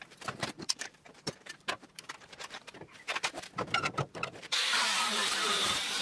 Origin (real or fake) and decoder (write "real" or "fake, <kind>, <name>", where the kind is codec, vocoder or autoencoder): fake, vocoder, BigVGAN v2